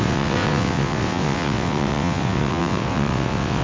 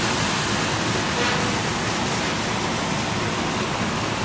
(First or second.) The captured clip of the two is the second